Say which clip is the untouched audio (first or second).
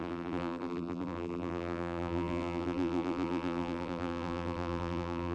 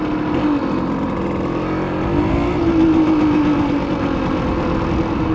second